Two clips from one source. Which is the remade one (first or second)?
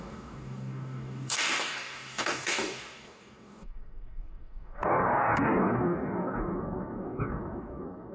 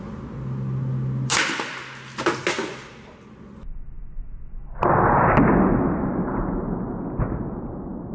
first